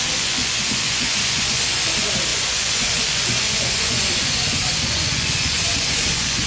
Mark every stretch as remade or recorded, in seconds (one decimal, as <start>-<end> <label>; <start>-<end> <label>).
0.0-6.5 remade